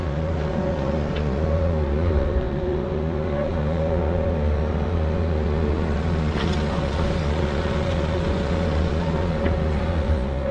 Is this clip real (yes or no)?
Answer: no